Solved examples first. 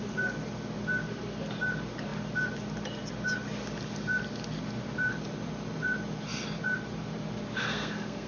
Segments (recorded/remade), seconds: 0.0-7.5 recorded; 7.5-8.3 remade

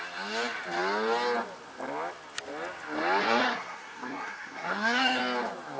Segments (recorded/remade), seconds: 0.0-3.2 recorded; 3.2-5.2 remade; 5.2-5.8 recorded